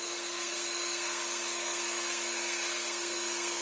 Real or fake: fake